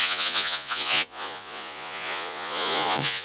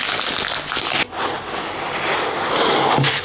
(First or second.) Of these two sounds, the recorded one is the second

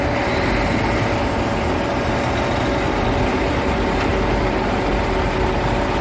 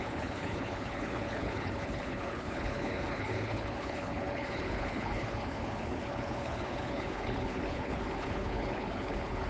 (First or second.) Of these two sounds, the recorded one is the first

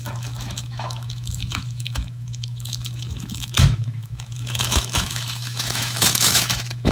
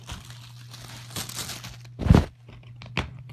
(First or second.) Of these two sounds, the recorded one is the second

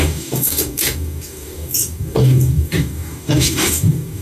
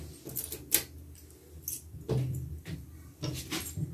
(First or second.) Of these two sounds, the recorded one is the second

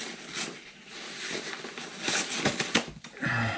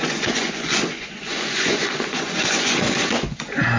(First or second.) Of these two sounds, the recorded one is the first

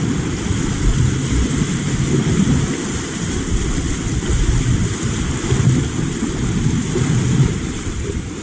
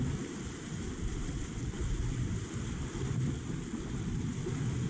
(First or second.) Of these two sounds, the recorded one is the second